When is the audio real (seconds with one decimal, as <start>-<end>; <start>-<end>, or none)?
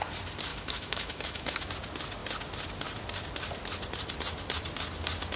0.0-0.5; 1.7-5.4